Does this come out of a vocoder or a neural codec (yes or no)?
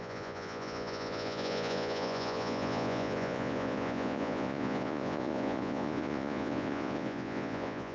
yes